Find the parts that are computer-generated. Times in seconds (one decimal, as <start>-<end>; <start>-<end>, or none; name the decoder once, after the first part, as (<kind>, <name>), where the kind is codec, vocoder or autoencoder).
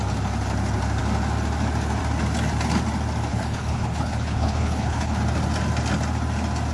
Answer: 3.3-5.2 (codec, HILCodec)